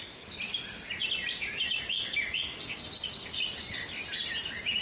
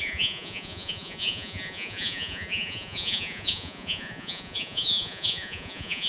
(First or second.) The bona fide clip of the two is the first